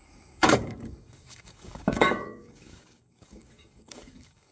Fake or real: fake